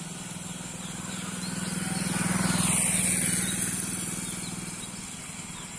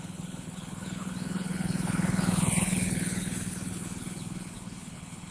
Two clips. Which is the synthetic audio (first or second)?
second